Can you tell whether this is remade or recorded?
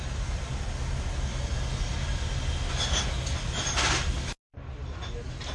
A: recorded